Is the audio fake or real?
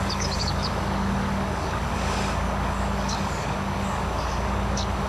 fake